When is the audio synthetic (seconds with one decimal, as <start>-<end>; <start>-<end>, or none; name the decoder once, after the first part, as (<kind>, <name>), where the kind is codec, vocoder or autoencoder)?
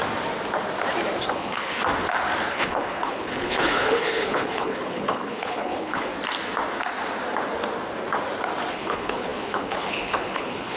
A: 1.3-1.8 (codec, HILCodec); 2.5-6.1; 8.7-10.8